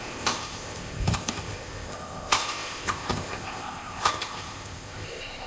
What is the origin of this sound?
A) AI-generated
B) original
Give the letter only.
A